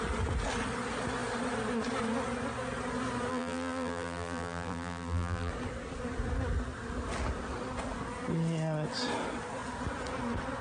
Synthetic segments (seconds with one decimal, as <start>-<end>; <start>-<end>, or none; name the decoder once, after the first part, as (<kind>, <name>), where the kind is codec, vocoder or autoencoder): 3.3-5.5 (vocoder, BigVGAN v2)